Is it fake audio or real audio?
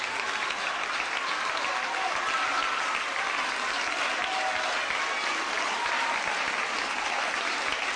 real